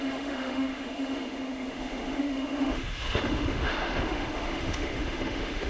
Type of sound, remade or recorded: remade